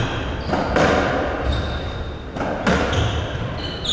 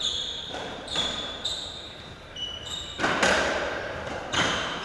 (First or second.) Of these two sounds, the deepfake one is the second